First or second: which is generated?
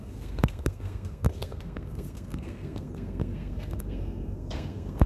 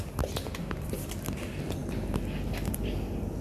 first